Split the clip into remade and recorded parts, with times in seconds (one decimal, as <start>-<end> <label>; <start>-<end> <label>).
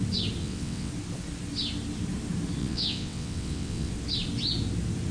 0.0-0.4 recorded; 0.4-0.9 remade; 0.9-2.6 recorded; 2.6-3.9 remade; 3.9-5.1 recorded